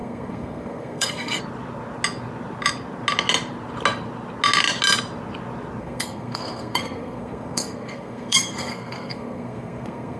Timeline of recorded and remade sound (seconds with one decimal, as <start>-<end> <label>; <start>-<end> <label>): 0.0-1.4 remade; 1.4-5.8 recorded; 5.8-10.2 remade